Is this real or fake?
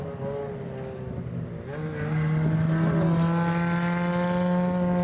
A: real